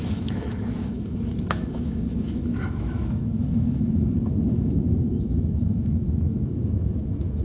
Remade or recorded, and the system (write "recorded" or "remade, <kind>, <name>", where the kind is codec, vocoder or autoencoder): remade, autoencoder, DAC-VAE